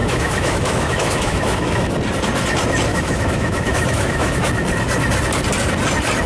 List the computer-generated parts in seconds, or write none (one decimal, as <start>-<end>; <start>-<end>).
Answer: 0.0-1.9; 2.9-4.5